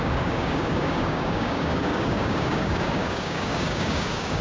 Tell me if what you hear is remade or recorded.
remade